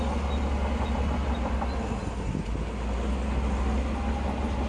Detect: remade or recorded recorded